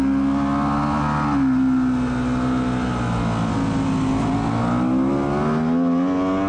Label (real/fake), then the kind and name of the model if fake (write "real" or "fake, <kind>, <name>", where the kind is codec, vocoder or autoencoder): real